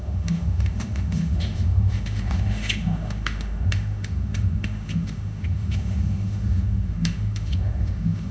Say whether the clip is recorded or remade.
remade